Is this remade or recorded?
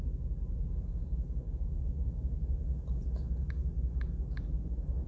recorded